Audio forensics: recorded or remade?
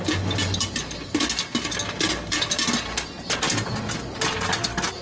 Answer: recorded